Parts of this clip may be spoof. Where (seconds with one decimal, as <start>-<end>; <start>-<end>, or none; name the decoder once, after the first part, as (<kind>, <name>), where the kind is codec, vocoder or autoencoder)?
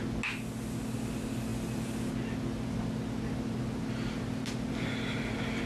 none